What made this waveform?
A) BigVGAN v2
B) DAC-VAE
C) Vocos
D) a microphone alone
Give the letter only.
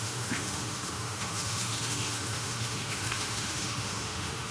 B